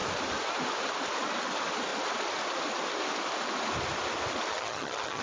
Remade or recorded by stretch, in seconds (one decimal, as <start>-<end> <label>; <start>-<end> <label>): 0.0-4.5 recorded; 4.5-5.2 remade